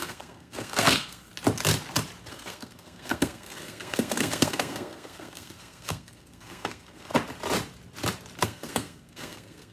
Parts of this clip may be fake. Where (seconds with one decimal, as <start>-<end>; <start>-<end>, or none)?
0.0-1.3; 2.3-7.1; 8.4-9.7